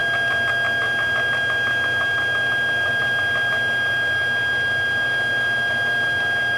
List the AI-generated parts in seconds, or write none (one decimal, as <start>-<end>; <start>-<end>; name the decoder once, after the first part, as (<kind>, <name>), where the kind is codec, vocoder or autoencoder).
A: none